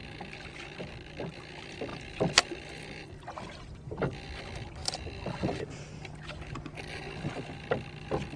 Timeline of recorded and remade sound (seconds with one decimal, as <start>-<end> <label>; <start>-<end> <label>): 0.0-1.9 recorded; 1.9-3.1 remade; 3.1-4.8 recorded; 4.8-5.8 remade; 5.8-8.4 recorded